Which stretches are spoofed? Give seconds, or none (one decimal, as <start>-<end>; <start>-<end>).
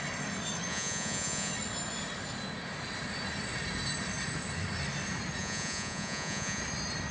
0.7-1.5; 5.4-6.6